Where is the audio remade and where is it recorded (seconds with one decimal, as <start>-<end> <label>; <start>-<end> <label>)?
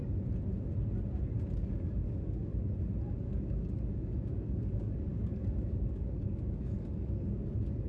0.0-1.7 recorded; 1.7-2.5 remade; 2.5-3.2 recorded; 3.2-7.9 remade